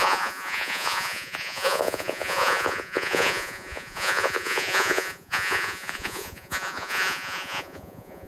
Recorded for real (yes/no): no